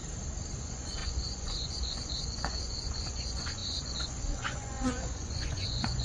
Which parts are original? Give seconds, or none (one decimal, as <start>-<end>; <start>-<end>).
0.0-0.6